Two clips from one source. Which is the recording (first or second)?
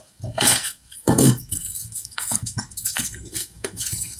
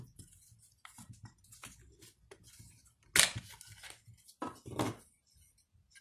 second